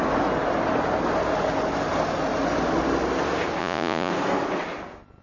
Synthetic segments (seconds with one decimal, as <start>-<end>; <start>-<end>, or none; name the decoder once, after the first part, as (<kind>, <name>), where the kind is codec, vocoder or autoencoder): 3.6-4.1 (vocoder, Vocos)